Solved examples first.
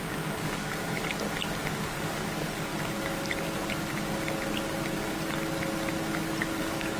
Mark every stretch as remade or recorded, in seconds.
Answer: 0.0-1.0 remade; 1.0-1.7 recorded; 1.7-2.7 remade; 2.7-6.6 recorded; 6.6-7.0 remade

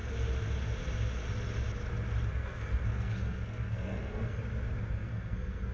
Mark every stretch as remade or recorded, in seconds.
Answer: 0.0-2.3 recorded; 2.3-4.4 remade; 4.4-4.9 recorded; 4.9-5.7 remade

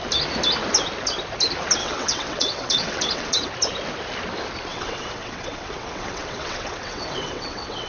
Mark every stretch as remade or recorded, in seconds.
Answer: 0.0-1.8 recorded; 1.8-3.5 remade; 3.5-4.7 recorded; 4.7-7.9 remade

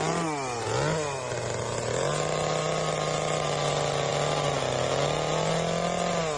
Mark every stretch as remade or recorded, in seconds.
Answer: 0.0-6.4 recorded

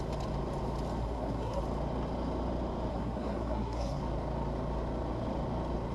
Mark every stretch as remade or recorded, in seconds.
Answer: 0.0-1.0 recorded; 1.0-1.6 remade; 1.6-2.9 recorded; 2.9-4.0 remade; 4.0-5.9 recorded